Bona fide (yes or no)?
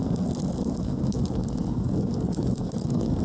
no